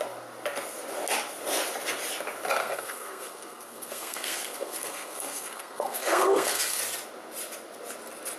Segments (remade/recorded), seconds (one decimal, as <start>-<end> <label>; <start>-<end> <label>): 0.0-2.6 recorded; 2.6-6.8 remade; 6.8-8.4 recorded